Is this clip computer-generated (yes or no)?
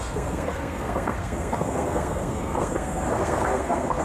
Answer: yes